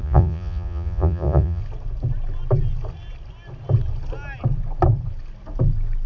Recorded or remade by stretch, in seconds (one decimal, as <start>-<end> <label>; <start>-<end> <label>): 0.0-1.6 remade; 1.6-6.1 recorded